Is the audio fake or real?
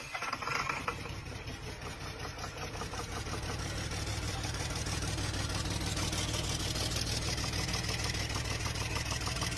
real